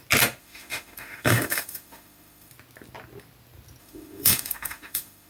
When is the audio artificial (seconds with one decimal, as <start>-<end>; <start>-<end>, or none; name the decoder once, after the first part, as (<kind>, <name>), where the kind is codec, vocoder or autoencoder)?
0.4-2.5 (autoencoder, DAC-VAE); 3.8-5.3